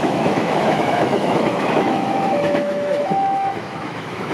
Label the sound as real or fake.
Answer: fake